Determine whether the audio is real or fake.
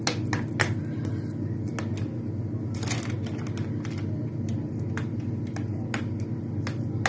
real